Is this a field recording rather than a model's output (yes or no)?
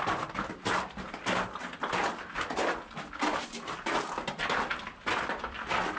yes